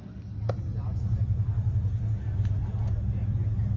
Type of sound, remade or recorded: recorded